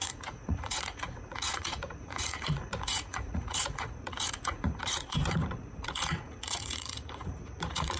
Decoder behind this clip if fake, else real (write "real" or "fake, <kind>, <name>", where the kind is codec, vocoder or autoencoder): fake, vocoder, Vocos